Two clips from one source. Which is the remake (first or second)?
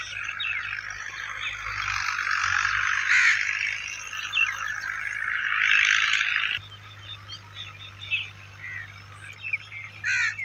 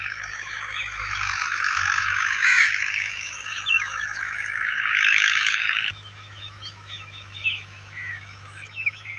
second